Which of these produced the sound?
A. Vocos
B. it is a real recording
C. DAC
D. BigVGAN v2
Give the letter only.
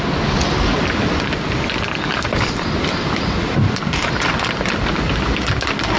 B